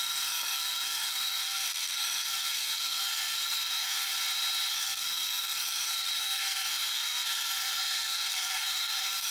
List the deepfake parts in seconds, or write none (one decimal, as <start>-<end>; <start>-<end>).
0.0-4.1; 4.7-9.3